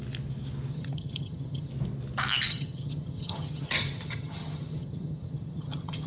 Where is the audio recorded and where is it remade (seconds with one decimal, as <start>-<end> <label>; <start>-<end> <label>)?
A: 0.0-0.7 recorded; 0.7-1.7 remade; 1.7-2.5 recorded; 2.5-6.1 remade